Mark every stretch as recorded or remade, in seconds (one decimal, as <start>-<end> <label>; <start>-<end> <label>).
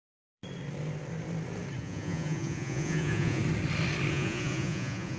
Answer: 0.0-0.4 remade; 0.4-1.8 recorded; 1.8-3.4 remade; 3.4-4.1 recorded; 4.1-5.2 remade